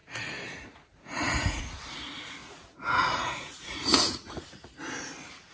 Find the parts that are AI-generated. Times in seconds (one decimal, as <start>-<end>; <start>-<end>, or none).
0.0-1.6; 2.4-4.8